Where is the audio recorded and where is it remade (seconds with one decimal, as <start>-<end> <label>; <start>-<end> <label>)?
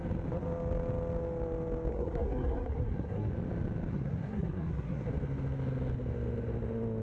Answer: 0.0-1.9 recorded; 1.9-3.3 remade; 3.3-3.9 recorded; 3.9-5.1 remade; 5.1-7.0 recorded